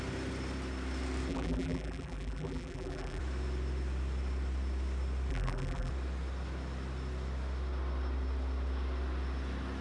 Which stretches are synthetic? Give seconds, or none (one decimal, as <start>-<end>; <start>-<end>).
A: 1.3-3.2; 5.3-5.9